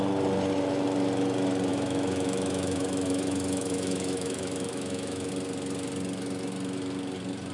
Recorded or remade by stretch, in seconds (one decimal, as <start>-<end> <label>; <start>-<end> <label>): 0.0-1.7 recorded; 1.7-5.3 remade; 5.3-7.5 recorded